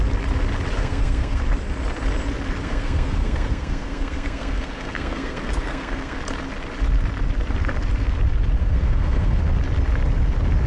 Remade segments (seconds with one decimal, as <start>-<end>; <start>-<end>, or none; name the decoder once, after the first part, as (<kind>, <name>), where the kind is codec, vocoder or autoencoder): 0.8-1.4 (codec, SNAC); 2.6-6.2; 8.6-9.4